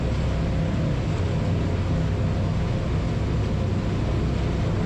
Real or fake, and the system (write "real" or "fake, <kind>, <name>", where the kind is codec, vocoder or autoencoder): real